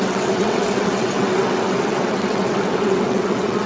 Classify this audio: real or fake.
fake